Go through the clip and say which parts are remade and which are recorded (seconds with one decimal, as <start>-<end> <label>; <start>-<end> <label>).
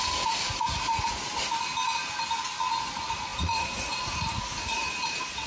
0.0-1.3 remade; 1.3-2.8 recorded; 2.8-5.5 remade